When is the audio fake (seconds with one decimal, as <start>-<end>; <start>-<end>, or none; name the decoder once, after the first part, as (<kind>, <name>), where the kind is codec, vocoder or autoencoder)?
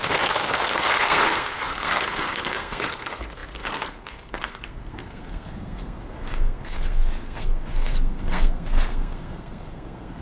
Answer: 0.0-10.2 (codec, SNAC)